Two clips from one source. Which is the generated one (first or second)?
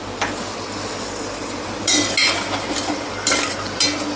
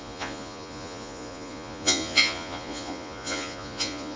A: second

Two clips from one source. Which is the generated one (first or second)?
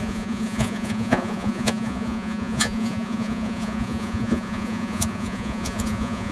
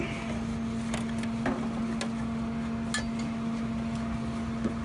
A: first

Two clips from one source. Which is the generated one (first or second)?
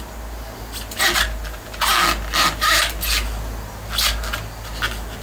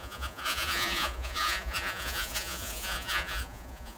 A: second